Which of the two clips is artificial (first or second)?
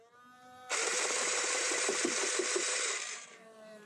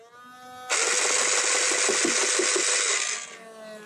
first